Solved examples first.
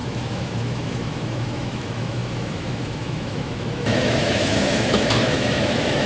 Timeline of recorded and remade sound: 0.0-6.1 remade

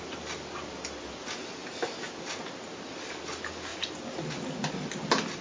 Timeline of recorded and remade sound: 0.0-5.4 recorded

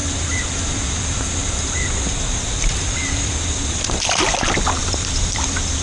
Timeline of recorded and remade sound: 0.0-2.4 remade; 2.4-3.0 recorded; 3.0-4.2 remade; 4.2-4.8 recorded; 4.8-5.8 remade

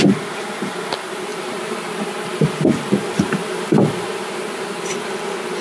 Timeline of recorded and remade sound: 0.0-5.6 recorded